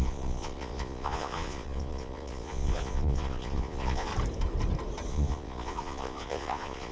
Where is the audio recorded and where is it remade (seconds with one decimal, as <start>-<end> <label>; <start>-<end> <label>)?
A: 0.0-4.1 remade; 4.1-5.1 recorded; 5.1-6.9 remade